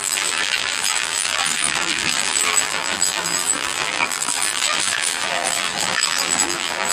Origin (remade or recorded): remade